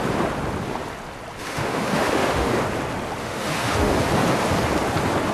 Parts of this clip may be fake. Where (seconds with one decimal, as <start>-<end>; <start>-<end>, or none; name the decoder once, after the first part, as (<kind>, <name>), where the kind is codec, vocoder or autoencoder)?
1.4-2.6 (autoencoder, DAC-VAE); 3.2-3.9